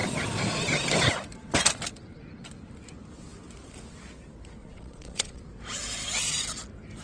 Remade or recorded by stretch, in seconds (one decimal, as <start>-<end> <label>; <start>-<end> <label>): 0.0-4.6 recorded; 4.6-5.4 remade; 5.4-7.0 recorded